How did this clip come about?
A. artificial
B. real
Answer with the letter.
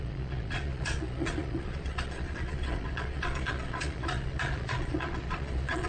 A